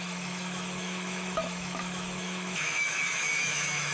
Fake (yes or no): yes